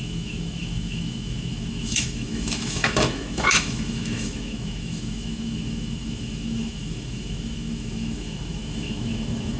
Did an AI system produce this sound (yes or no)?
yes